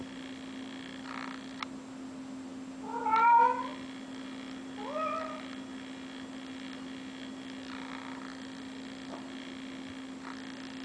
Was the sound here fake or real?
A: real